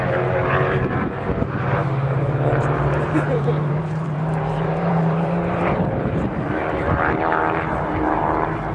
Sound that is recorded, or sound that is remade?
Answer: remade